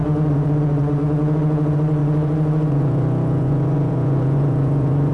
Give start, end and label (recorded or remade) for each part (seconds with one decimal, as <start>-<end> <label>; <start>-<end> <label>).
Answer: 0.0-5.1 remade